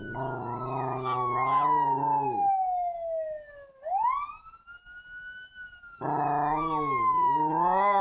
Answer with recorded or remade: recorded